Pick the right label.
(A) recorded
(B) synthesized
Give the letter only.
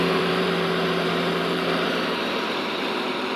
B